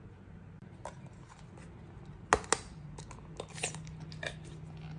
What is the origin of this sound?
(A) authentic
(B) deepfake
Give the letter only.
A